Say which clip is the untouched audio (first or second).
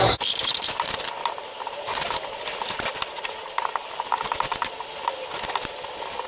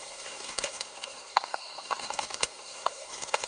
first